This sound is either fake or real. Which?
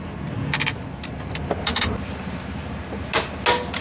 real